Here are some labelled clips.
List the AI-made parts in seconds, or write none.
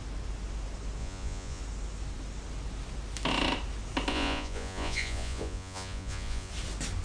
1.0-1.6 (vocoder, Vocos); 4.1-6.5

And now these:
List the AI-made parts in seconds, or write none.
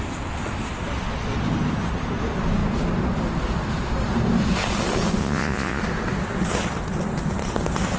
5.2-5.8 (vocoder, Vocos)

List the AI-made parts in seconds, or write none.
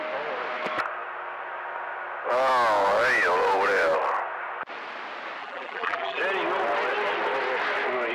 5.4-6.2 (vocoder, BigVGAN v2)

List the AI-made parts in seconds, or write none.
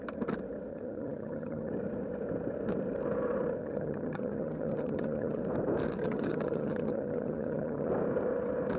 0.7-1.7 (vocoder, HiFi-GAN); 3.6-5.4; 6.0-7.9